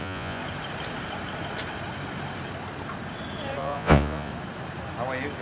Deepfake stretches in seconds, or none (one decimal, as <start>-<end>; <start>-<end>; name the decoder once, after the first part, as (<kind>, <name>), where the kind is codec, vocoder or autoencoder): 0.0-0.4 (vocoder, Vocos); 3.6-4.3